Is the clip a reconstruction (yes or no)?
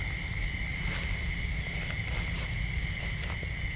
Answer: no